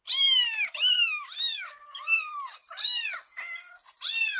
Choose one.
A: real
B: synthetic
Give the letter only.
A